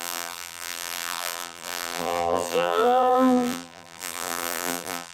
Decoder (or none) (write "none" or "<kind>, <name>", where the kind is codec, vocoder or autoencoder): vocoder, BigVGAN v2